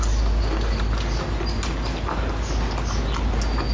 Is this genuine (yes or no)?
yes